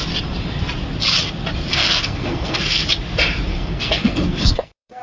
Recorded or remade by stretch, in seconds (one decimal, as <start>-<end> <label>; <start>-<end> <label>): 0.0-1.7 recorded; 1.7-2.8 remade; 2.8-3.5 recorded; 3.5-5.0 remade